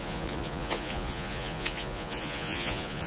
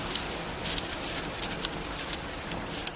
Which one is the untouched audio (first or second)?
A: second